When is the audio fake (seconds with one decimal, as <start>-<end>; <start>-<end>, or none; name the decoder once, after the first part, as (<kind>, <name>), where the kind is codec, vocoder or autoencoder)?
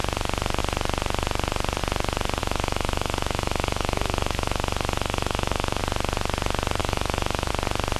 2.4-5.8 (autoencoder, DAC-VAE); 6.8-7.5